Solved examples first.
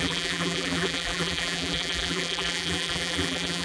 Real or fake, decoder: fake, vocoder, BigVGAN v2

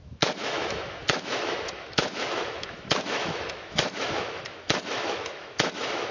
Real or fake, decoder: fake, autoencoder, DAC-VAE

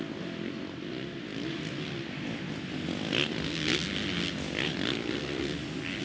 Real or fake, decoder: real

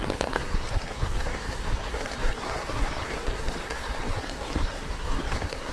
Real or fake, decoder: fake, codec, SNAC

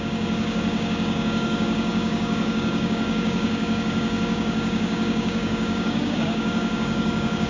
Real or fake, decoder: fake, codec, DAC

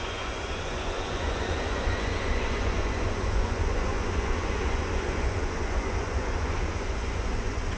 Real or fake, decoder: fake, vocoder, Vocos